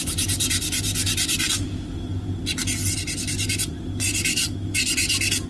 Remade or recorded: recorded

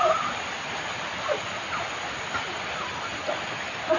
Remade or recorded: recorded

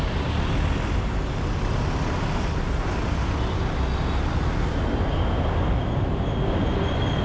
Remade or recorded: recorded